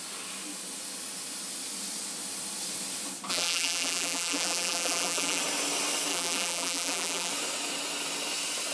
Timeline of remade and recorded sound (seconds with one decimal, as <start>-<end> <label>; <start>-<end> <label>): 0.0-3.3 recorded; 3.3-5.4 remade; 5.4-6.1 recorded; 6.1-7.3 remade; 7.3-8.7 recorded